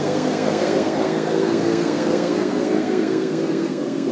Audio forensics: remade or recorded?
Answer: remade